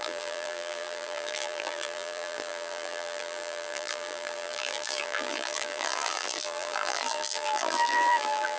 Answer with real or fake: fake